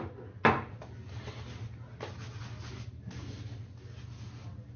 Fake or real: real